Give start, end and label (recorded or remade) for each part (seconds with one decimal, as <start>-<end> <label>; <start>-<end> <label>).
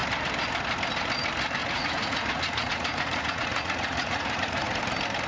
0.0-1.6 recorded; 1.6-4.8 remade; 4.8-5.3 recorded